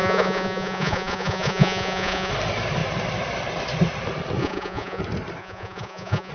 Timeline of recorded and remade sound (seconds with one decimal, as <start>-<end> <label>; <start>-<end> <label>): 0.0-2.3 remade; 2.3-4.4 recorded; 4.4-5.0 remade; 5.0-5.4 recorded; 5.4-6.3 remade